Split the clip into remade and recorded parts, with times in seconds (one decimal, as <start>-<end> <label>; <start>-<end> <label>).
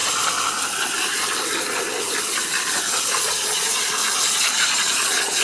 0.0-3.2 recorded; 3.2-4.0 remade; 4.0-4.5 recorded; 4.5-5.4 remade